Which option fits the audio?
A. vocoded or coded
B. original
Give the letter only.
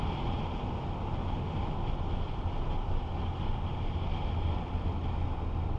B